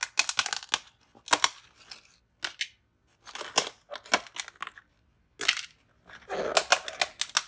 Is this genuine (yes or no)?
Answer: yes